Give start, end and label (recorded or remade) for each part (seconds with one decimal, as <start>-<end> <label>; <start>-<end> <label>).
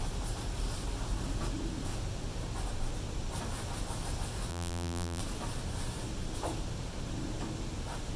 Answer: 0.0-4.5 recorded; 4.5-5.2 remade; 5.2-8.2 recorded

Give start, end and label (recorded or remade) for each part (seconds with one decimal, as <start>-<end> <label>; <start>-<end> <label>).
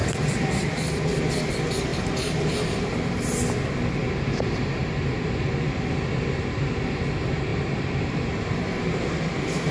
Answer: 0.0-1.0 remade; 1.0-1.9 recorded; 1.9-2.9 remade; 2.9-4.0 recorded; 4.0-4.8 remade; 4.8-7.5 recorded; 7.5-9.7 remade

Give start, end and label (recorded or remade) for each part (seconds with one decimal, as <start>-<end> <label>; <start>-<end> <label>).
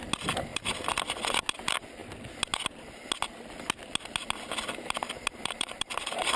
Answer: 0.0-0.5 recorded; 0.5-1.0 remade; 1.0-5.4 recorded; 5.4-6.4 remade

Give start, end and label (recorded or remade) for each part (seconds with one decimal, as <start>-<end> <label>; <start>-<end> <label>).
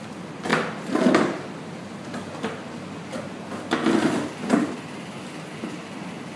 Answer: 0.0-6.4 recorded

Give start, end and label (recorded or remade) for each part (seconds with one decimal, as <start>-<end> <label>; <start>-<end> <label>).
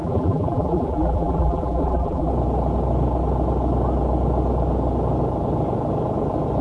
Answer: 0.0-2.3 remade; 2.3-6.6 recorded